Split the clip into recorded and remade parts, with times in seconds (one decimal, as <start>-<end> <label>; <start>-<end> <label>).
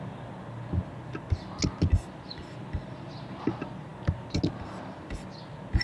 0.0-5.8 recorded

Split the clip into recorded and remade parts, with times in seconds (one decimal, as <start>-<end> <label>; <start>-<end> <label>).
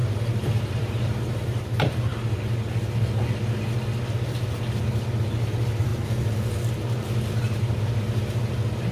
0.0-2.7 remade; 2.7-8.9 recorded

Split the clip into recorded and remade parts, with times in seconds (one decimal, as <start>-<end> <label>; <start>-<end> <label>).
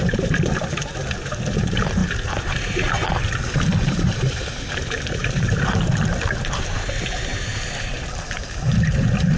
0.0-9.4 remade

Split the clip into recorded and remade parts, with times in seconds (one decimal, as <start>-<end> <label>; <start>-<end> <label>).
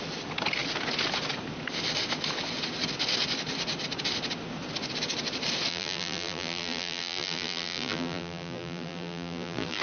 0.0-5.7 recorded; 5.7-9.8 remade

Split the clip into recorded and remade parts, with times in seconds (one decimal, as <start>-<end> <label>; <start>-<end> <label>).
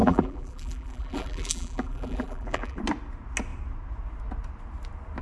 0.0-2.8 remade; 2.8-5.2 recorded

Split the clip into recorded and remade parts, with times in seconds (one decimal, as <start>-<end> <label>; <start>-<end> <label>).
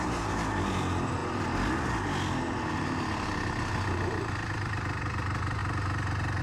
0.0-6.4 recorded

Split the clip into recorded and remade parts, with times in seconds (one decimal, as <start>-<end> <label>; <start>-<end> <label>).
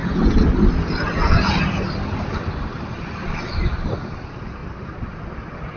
0.0-5.8 recorded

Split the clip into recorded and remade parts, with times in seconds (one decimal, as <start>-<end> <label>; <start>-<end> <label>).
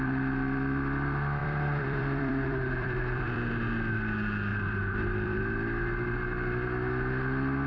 0.0-1.4 recorded; 1.4-3.5 remade; 3.5-4.5 recorded; 4.5-5.4 remade; 5.4-7.7 recorded